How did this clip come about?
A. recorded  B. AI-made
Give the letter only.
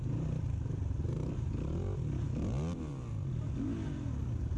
A